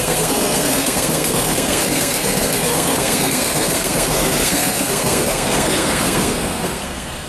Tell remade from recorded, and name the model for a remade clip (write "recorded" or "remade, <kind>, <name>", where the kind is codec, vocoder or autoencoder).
remade, codec, SNAC